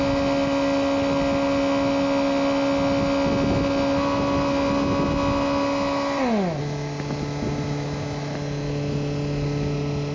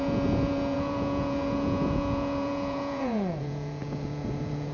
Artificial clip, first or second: second